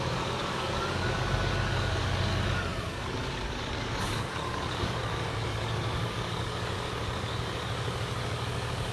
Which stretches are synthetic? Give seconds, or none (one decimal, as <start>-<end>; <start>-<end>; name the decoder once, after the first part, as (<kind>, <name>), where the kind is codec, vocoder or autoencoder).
0.0-8.9 (codec, DAC)